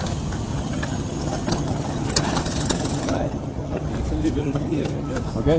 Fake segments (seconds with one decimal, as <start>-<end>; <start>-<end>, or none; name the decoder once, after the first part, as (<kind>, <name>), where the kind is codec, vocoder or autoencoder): 0.5-3.9 (vocoder, HiFi-GAN); 4.4-5.1